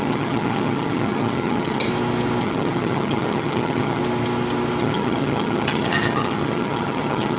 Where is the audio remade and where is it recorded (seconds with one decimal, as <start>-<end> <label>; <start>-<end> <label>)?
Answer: 0.0-1.9 remade; 1.9-2.4 recorded; 2.4-4.0 remade; 4.0-4.8 recorded; 4.8-7.4 remade